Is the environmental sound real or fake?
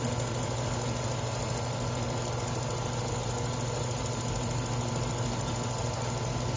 real